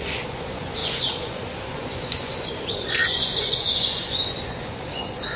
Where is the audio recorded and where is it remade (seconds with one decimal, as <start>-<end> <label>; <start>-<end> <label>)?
0.0-5.4 remade